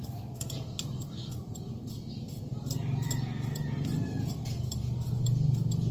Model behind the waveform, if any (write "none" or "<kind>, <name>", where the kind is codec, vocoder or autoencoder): none